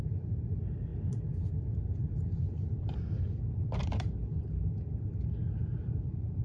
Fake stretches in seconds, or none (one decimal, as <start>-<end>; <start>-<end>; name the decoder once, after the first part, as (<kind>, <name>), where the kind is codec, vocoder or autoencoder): 0.9-4.7 (vocoder, BigVGAN v2); 5.6-6.4

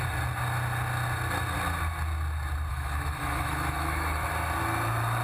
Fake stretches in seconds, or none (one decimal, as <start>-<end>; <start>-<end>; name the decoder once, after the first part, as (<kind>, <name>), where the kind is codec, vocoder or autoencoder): 2.7-4.3 (autoencoder, DAC-VAE)

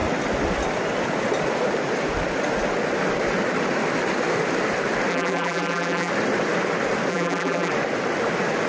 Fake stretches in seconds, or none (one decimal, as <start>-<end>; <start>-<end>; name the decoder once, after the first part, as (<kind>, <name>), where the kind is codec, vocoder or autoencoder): 5.1-6.1 (vocoder, BigVGAN v2); 7.1-7.7